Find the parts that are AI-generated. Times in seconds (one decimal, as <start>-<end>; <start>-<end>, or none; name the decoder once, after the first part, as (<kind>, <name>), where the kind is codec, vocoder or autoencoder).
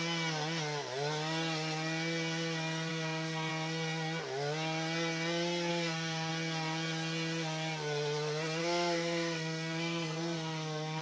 2.9-3.5 (codec, SNAC); 5.7-6.3; 8.6-11.0